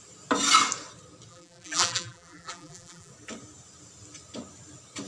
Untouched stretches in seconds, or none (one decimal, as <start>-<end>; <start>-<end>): 0.0-1.3; 3.1-5.1